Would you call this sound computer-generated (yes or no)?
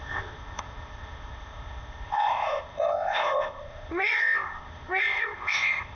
yes